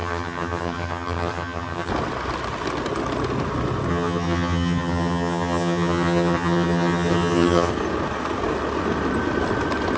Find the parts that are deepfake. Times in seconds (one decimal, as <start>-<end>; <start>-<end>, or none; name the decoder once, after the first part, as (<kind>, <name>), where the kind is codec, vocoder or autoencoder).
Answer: 0.0-1.9 (vocoder, HiFi-GAN); 3.9-7.7